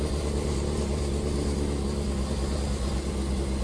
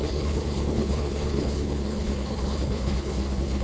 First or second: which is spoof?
second